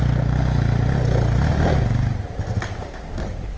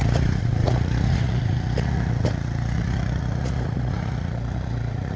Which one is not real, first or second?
second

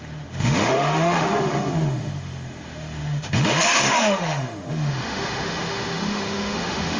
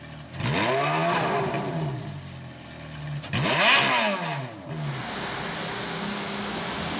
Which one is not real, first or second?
first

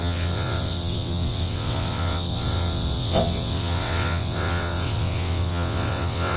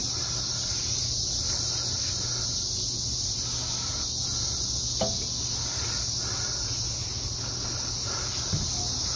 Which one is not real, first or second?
first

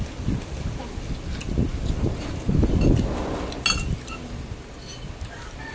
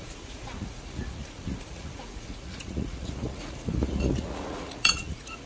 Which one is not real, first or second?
second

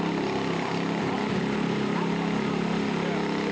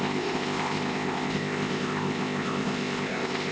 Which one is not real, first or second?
second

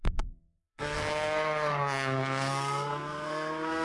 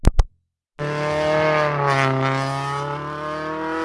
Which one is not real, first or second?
first